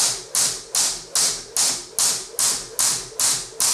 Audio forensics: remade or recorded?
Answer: recorded